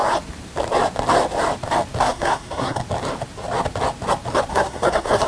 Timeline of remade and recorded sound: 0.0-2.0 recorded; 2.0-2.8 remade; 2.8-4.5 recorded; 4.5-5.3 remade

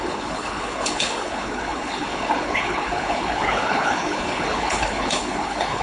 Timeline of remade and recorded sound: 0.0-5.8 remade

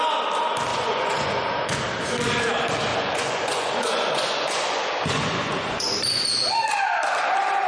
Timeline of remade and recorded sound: 0.0-0.7 recorded; 0.7-1.8 remade; 1.8-2.9 recorded; 2.9-6.2 remade; 6.2-7.7 recorded